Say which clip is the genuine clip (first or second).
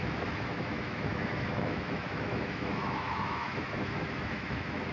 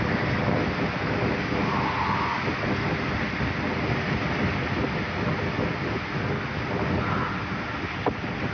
second